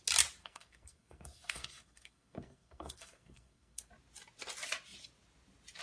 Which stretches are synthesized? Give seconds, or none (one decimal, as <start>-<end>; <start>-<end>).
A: 0.4-3.9